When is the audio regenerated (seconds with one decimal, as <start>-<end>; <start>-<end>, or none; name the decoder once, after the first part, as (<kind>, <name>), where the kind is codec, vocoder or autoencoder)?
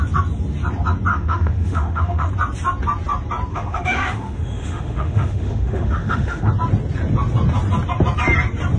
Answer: 1.1-2.3 (autoencoder, DAC-VAE); 3.5-6.5